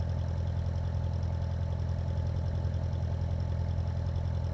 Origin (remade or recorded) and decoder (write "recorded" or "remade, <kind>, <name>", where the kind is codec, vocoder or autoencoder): recorded